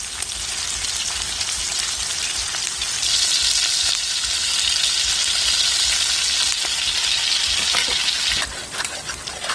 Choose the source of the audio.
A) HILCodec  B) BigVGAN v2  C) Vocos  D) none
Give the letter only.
D